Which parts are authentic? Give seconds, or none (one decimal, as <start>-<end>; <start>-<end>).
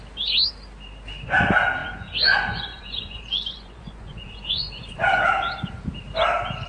0.0-1.8; 5.8-6.7